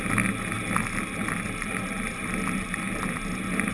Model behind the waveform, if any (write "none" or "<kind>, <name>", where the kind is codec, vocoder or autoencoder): none